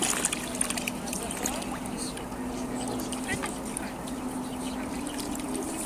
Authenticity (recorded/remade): recorded